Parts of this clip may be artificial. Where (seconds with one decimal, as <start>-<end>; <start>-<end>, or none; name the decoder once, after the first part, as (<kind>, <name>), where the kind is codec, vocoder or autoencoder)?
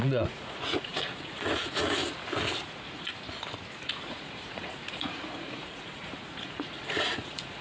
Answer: 0.0-2.0 (vocoder, Vocos); 2.6-3.1; 3.9-7.6